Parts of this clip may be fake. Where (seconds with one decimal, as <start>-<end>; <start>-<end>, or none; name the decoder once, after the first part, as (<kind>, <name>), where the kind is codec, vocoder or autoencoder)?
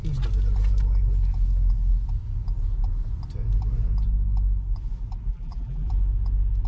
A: 5.3-5.9 (vocoder, BigVGAN v2)